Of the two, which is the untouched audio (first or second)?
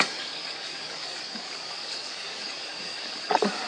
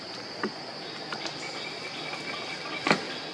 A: second